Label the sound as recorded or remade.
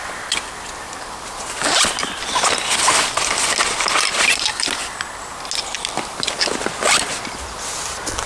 recorded